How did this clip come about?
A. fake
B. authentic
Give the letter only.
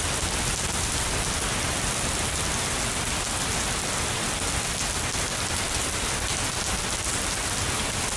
B